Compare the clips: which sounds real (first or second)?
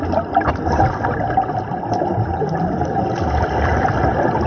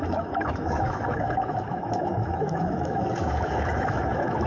first